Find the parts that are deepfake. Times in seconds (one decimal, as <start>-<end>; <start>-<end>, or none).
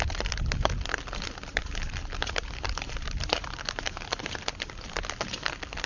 1.5-5.0